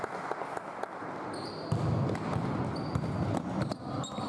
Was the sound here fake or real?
real